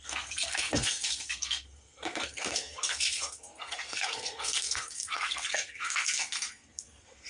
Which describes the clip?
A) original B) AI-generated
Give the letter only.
B